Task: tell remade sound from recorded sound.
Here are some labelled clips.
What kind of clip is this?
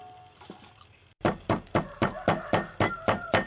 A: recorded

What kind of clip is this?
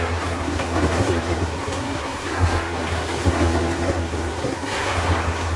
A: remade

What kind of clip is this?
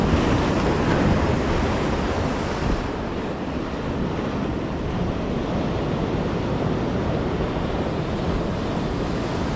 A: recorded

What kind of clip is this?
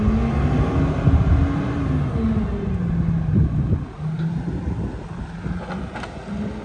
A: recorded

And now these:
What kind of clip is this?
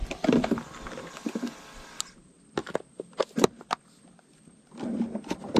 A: recorded